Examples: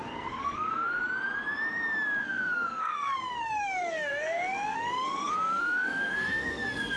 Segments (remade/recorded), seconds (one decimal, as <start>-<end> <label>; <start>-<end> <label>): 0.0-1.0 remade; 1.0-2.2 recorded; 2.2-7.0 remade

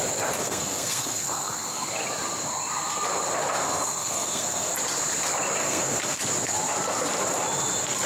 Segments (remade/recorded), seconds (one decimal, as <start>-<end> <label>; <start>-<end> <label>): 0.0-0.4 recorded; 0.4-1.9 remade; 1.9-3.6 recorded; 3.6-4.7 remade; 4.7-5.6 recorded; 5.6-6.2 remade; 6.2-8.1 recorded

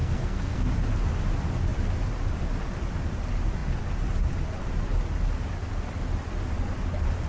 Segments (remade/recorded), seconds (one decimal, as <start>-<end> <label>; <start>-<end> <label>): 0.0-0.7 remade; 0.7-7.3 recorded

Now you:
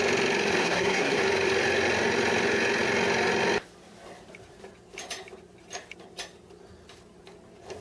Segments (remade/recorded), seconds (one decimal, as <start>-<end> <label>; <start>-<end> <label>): 0.0-0.6 recorded; 0.6-1.2 remade; 1.2-7.8 recorded

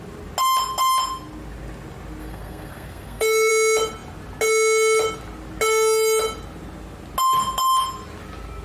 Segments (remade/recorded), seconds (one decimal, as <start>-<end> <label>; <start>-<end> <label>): 0.0-2.2 recorded; 2.2-3.5 remade; 3.5-8.6 recorded

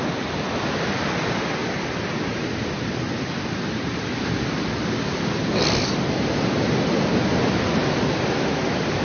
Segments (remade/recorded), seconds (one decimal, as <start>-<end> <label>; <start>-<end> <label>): 0.0-9.0 recorded